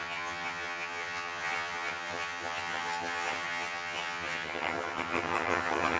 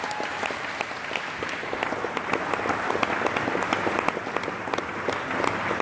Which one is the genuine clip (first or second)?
second